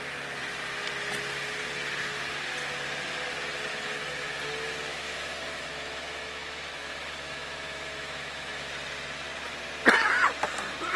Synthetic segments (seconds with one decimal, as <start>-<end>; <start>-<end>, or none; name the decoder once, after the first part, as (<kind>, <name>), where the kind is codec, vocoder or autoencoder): 3.7-4.4 (autoencoder, DAC-VAE); 4.9-8.7